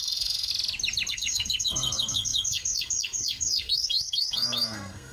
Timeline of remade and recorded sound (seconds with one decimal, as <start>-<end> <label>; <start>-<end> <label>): 0.0-0.5 remade; 0.5-1.1 recorded; 1.1-5.1 remade